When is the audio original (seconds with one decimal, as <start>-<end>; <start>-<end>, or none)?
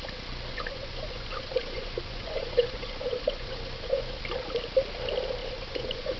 0.0-0.5; 4.2-5.4